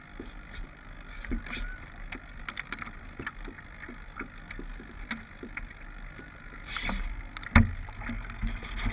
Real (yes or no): yes